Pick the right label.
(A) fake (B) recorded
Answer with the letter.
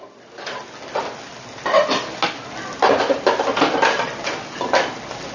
B